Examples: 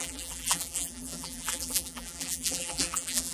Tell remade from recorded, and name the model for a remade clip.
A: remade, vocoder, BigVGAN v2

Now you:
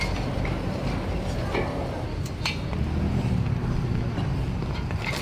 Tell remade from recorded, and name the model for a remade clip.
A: recorded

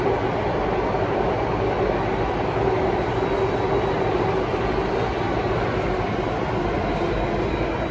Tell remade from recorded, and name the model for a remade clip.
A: recorded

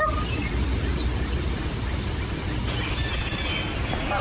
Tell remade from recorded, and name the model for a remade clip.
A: recorded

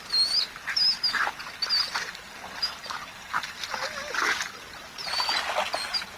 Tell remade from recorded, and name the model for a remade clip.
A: recorded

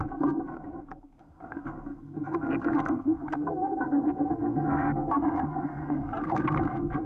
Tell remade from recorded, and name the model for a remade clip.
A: remade, codec, SNAC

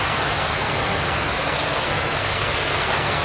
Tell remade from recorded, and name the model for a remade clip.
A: remade, codec, SNAC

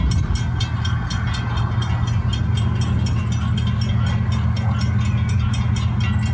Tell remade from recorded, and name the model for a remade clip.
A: recorded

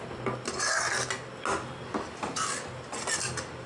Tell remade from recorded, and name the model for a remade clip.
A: recorded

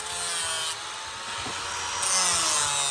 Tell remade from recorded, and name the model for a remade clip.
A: recorded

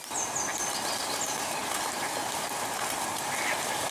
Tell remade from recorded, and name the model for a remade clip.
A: recorded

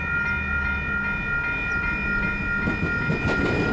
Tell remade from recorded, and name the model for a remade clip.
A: recorded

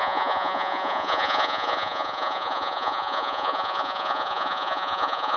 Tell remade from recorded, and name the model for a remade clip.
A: remade, vocoder, Vocos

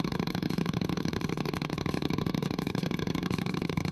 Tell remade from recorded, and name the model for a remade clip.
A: remade, codec, SNAC